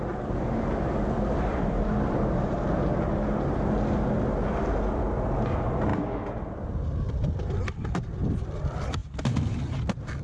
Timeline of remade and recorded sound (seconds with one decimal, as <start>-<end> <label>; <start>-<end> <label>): 0.0-10.2 recorded